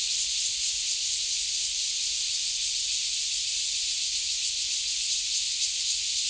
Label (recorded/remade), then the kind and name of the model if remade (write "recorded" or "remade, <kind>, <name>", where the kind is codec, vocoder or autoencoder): recorded